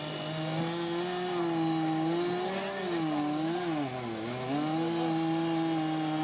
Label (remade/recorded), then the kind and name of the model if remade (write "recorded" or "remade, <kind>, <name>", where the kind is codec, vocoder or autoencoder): recorded